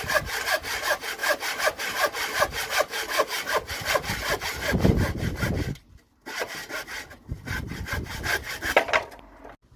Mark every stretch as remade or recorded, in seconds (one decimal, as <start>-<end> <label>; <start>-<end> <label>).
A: 0.0-1.2 recorded; 1.2-1.8 remade; 1.8-9.8 recorded